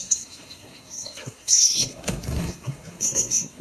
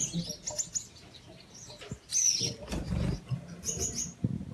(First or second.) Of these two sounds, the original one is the second